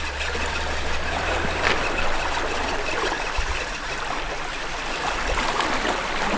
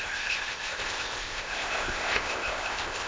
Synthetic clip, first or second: second